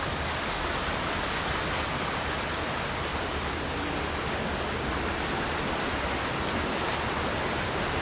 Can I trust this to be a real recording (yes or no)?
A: yes